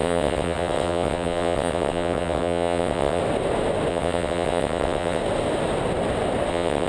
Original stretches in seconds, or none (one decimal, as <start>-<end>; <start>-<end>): 3.2-3.9; 5.2-6.5